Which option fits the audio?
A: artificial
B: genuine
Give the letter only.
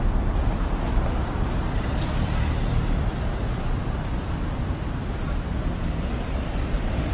B